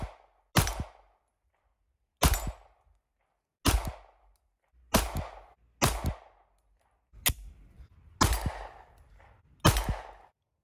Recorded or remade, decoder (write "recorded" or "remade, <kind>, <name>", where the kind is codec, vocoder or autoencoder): recorded